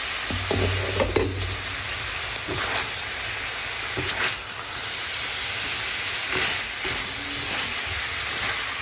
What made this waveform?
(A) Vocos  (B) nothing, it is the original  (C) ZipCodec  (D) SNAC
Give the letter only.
B